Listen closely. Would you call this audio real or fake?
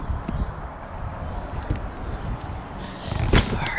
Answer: real